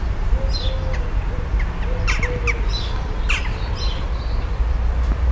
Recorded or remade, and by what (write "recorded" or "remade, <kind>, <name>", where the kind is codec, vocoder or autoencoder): recorded